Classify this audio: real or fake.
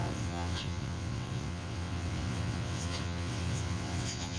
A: fake